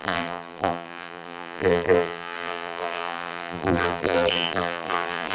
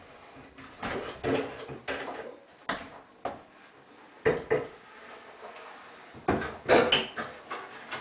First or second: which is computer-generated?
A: first